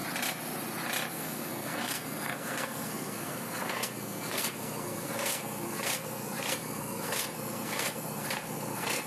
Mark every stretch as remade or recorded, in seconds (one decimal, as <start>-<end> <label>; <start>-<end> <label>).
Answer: 0.0-1.1 recorded; 1.1-9.1 remade